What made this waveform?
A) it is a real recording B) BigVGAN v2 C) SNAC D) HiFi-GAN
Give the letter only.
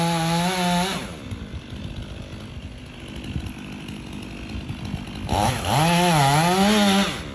A